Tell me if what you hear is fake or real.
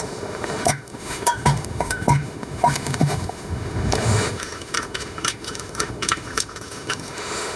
fake